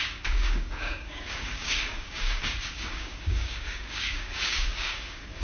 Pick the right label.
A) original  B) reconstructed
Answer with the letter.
B